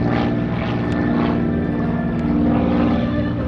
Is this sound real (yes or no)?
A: yes